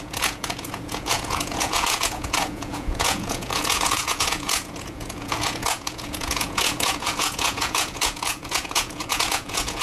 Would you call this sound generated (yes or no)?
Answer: yes